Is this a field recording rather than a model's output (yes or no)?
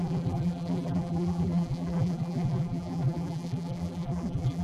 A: no